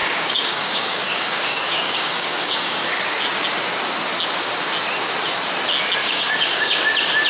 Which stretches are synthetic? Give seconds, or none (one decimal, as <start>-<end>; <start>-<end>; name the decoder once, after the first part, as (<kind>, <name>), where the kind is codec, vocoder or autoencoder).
0.0-2.9 (codec, DAC); 6.0-6.8